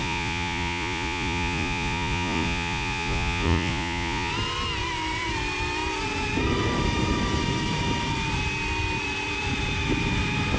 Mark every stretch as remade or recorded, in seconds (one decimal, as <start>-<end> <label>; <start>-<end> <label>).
0.0-4.3 remade; 4.3-10.6 recorded